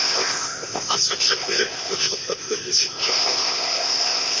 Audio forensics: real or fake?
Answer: fake